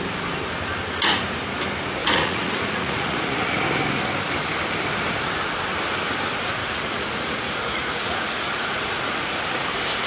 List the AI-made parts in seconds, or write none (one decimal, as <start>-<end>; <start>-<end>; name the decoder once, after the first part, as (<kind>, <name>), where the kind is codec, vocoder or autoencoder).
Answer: 2.0-3.6 (vocoder, Vocos); 6.6-9.4